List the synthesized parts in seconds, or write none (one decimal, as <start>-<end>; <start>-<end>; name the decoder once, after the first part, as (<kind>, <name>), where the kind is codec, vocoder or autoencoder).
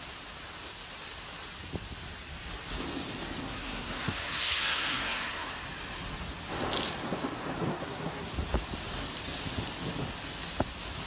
3.4-5.5 (codec, SNAC); 7.7-8.3